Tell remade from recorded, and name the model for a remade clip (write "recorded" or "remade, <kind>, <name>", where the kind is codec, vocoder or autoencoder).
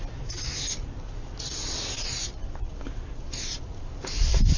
recorded